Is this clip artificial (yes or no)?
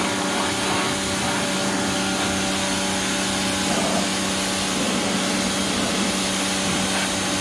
no